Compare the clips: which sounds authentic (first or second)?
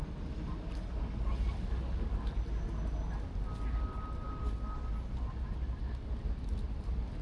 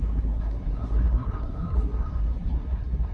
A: first